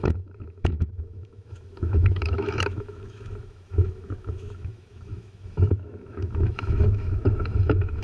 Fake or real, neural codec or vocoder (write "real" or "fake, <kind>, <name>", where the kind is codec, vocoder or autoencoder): fake, autoencoder, DAC-VAE